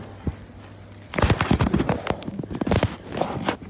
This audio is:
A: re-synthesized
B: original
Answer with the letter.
B